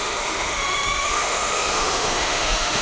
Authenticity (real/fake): fake